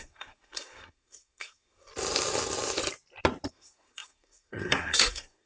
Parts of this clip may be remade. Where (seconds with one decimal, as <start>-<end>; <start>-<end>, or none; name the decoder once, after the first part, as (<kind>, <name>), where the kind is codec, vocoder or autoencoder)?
0.0-1.9 (codec, SNAC); 3.5-5.5